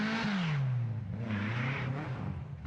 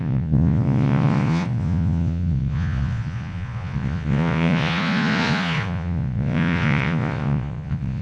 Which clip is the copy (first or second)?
second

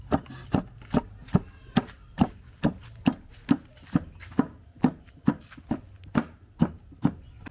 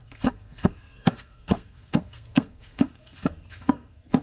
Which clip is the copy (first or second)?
second